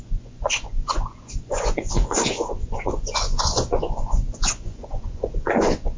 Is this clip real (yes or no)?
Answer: no